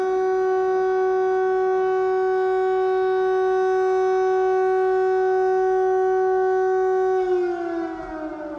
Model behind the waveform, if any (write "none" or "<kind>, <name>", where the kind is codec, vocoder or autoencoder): none